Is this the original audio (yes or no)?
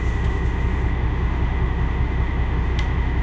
no